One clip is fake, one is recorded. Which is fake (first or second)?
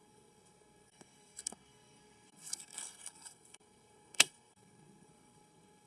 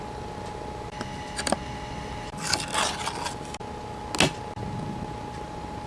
first